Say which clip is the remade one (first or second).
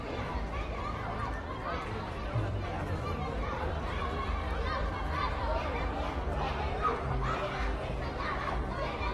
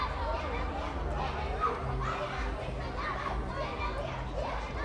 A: first